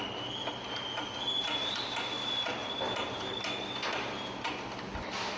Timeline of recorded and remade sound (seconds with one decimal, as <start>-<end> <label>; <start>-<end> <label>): 0.0-5.4 recorded